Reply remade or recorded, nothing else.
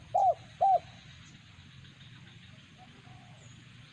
recorded